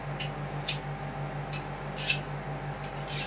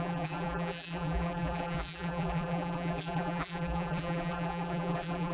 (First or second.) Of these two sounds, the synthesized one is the second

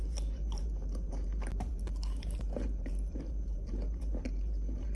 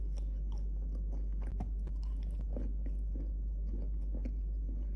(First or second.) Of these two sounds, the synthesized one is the first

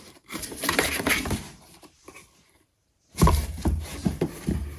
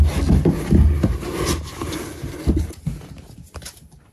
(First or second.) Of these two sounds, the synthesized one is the first